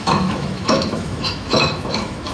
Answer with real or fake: fake